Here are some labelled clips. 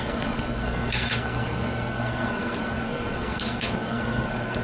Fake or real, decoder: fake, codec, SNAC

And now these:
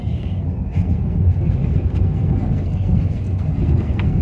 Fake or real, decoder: fake, codec, SNAC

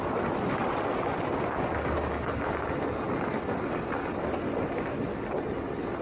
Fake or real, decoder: real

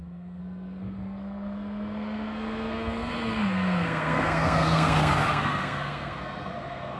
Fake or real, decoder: fake, codec, SNAC